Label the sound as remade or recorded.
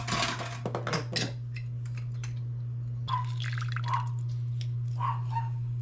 recorded